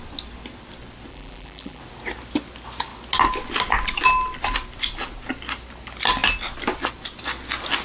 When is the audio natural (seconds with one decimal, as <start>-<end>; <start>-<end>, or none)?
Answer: 0.0-1.1; 1.8-7.8